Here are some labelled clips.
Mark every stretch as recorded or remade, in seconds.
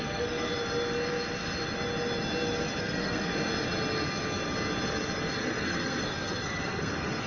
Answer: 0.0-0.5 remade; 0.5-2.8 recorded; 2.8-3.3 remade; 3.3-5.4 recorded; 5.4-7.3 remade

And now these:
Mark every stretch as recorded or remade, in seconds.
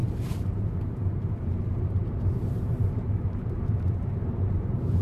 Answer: 0.0-5.0 remade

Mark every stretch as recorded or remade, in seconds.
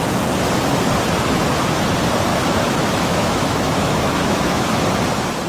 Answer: 0.0-2.3 recorded; 2.3-4.8 remade; 4.8-5.5 recorded